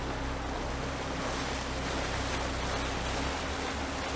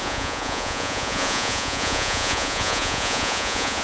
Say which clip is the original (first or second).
first